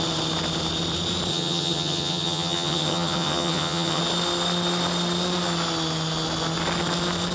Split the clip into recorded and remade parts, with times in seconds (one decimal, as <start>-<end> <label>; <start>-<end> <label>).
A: 0.0-1.3 recorded; 1.3-4.0 remade; 4.0-7.3 recorded